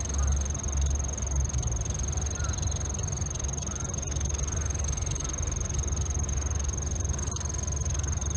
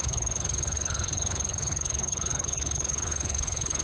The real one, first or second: first